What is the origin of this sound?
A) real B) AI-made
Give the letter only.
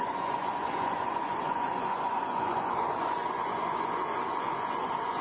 B